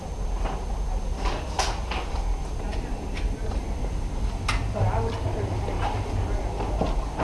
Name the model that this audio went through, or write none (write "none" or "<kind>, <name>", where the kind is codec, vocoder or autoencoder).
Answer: none